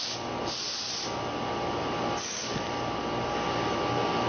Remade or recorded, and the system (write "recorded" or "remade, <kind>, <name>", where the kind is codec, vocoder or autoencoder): recorded